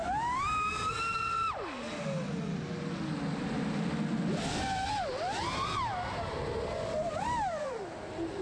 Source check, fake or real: real